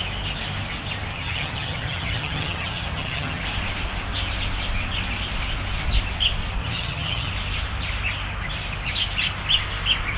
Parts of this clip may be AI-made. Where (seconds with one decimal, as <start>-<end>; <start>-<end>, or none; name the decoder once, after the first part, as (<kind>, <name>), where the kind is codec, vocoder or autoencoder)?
1.1-3.4 (vocoder, HiFi-GAN); 6.6-7.3